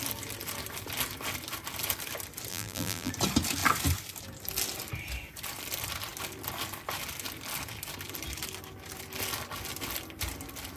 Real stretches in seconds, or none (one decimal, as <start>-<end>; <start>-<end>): 0.0-2.5; 3.1-10.8